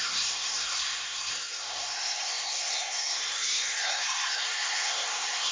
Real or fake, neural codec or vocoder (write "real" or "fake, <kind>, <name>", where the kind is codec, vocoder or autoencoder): fake, codec, SNAC